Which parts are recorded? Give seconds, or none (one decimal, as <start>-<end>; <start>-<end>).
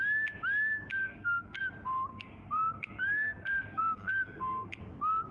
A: 0.0-1.0; 1.6-2.1; 4.8-5.3